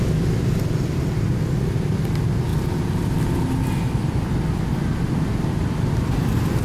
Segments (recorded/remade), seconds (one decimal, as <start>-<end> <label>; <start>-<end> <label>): 0.0-6.6 recorded

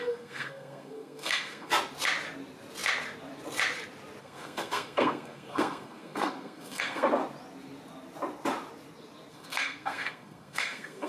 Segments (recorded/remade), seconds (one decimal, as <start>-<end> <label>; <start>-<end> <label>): 0.0-1.7 remade; 1.7-4.2 recorded; 4.2-7.2 remade; 7.2-9.3 recorded; 9.3-11.1 remade

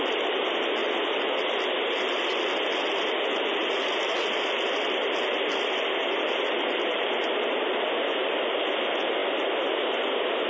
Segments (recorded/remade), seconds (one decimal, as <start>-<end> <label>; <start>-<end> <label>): 0.0-9.2 remade; 9.2-10.0 recorded; 10.0-10.5 remade

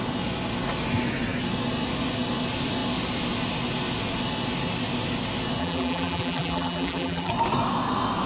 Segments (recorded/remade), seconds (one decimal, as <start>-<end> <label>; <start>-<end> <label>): 0.0-5.6 recorded; 5.6-7.3 remade; 7.3-8.3 recorded